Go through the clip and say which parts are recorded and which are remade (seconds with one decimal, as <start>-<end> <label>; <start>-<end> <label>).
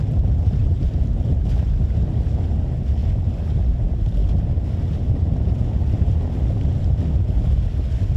0.0-8.2 recorded